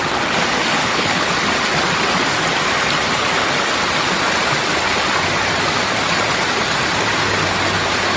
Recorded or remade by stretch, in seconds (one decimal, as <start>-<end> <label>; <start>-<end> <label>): 0.0-0.8 recorded; 0.8-1.3 remade; 1.3-8.2 recorded